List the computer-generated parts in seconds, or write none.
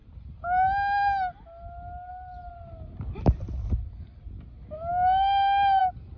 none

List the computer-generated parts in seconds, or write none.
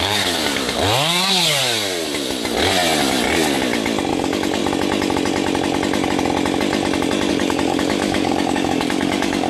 0.0-1.6 (codec, DAC); 4.1-4.6; 7.3-9.5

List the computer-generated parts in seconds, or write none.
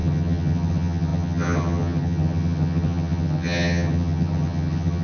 0.0-5.0 (vocoder, HiFi-GAN)